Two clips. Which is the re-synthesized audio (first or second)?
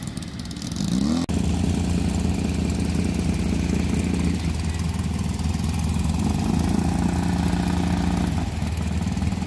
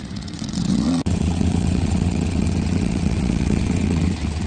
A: second